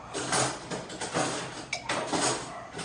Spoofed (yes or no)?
no